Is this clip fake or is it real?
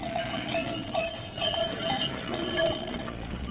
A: fake